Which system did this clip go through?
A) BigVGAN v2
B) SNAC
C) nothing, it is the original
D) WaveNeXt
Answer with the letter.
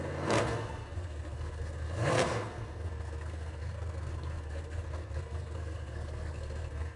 B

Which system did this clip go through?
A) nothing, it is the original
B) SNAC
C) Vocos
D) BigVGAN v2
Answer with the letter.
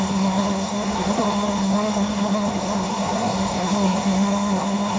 B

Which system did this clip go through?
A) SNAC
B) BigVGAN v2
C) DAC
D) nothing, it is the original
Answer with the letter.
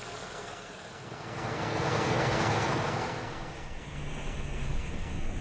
A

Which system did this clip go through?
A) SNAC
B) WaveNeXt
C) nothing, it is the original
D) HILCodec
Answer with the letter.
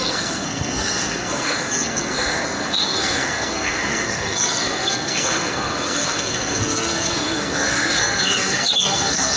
A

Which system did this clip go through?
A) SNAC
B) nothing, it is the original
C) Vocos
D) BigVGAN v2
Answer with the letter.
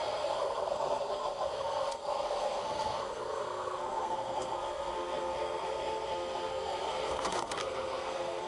A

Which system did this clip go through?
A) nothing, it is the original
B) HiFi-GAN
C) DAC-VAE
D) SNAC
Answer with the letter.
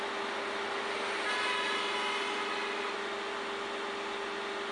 A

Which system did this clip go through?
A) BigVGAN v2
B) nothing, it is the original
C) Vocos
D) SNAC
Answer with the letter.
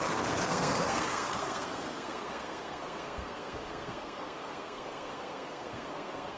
D